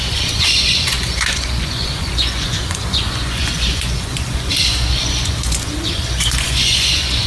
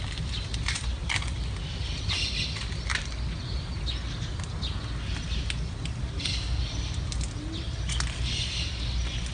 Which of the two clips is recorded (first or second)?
second